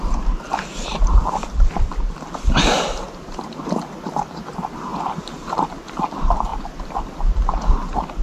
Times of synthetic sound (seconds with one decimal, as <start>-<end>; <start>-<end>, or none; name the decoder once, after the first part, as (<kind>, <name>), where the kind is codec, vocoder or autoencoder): 4.9-5.6 (vocoder, BigVGAN v2)